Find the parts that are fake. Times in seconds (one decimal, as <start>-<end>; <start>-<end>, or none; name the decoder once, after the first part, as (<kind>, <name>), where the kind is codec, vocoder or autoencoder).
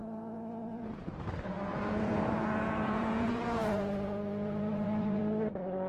0.0-1.1 (vocoder, Vocos); 1.7-5.2